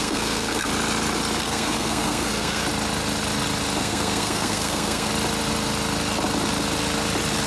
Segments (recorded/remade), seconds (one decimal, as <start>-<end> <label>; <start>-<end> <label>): 0.0-0.7 remade; 0.7-1.4 recorded; 1.4-2.6 remade; 2.6-3.8 recorded; 3.8-5.1 remade; 5.1-7.5 recorded